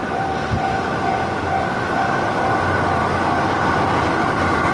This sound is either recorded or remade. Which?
remade